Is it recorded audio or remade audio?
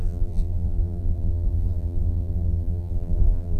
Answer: remade